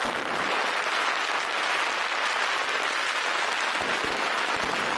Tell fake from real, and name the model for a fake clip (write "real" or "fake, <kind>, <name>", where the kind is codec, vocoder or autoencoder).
real